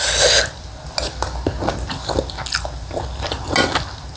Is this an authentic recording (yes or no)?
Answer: yes